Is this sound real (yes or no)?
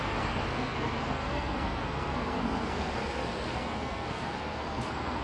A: no